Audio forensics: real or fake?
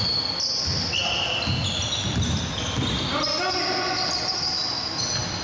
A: real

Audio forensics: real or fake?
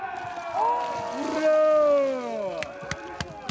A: real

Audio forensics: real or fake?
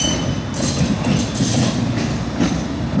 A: real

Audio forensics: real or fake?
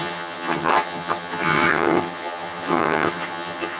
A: fake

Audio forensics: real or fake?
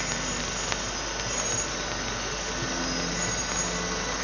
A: real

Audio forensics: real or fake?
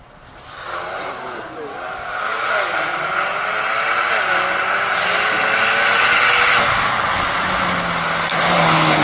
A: real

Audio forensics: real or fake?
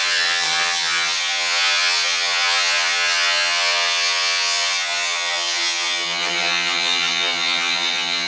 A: fake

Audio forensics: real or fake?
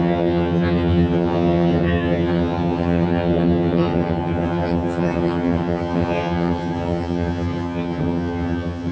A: fake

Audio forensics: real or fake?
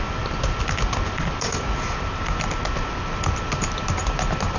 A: real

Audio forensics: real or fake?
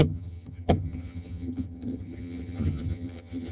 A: fake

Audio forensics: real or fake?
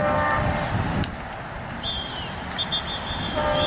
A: real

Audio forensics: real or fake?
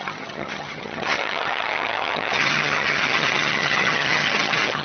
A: fake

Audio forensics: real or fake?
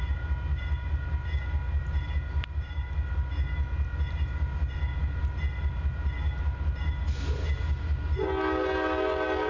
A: real